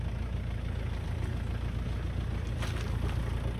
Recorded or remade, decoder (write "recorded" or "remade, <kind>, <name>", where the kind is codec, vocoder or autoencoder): recorded